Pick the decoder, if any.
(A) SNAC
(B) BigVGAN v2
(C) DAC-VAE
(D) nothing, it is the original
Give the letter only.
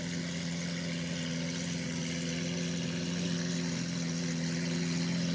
D